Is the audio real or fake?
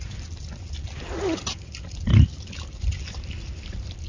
real